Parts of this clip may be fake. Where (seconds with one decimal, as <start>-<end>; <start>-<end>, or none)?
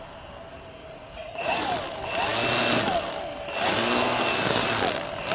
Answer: 0.8-1.7